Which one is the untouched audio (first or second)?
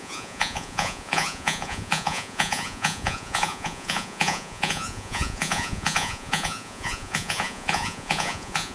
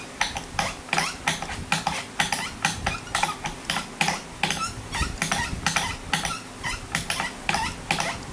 second